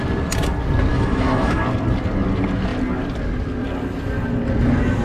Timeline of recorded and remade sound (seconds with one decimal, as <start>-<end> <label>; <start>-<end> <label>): 0.0-0.9 recorded; 0.9-1.6 remade; 1.6-5.0 recorded